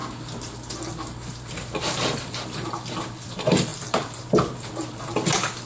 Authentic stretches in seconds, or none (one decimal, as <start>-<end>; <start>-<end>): 0.0-0.7